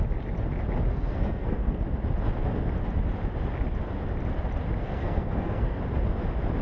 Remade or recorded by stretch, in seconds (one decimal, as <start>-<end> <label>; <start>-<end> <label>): 0.0-0.9 recorded; 0.9-1.8 remade; 1.8-4.8 recorded; 4.8-5.8 remade; 5.8-6.6 recorded